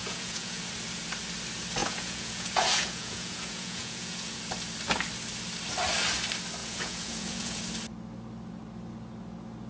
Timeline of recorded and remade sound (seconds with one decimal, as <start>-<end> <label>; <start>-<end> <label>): 0.0-0.6 remade; 0.6-1.8 recorded; 1.8-4.4 remade; 4.4-6.6 recorded; 6.6-7.6 remade; 7.6-9.7 recorded